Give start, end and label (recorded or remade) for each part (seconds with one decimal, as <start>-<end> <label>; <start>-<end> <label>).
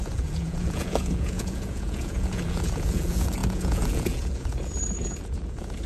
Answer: 0.0-5.9 remade